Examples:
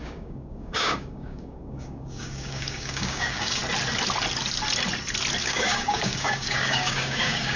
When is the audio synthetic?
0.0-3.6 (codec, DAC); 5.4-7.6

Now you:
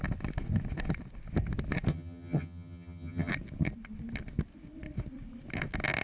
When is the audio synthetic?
1.9-3.3 (vocoder, HiFi-GAN)

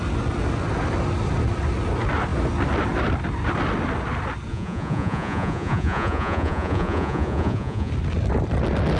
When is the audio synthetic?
4.5-7.9 (vocoder, Vocos)

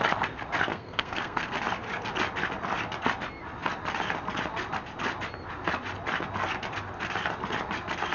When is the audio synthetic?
0.7-1.5 (codec, SNAC)